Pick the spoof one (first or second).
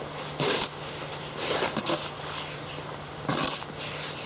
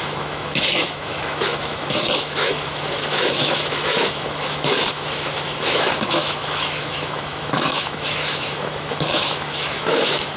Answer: second